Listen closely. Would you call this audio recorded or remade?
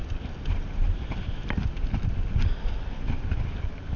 recorded